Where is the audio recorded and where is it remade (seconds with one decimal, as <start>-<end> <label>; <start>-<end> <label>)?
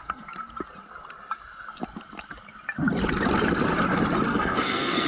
0.0-4.3 recorded; 4.3-5.1 remade